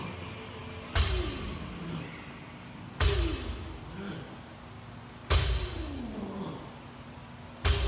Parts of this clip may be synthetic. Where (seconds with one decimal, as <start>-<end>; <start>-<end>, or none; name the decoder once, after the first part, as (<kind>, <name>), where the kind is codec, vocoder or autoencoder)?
none